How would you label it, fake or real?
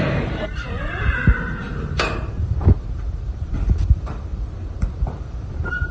fake